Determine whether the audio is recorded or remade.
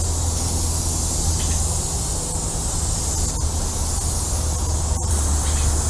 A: recorded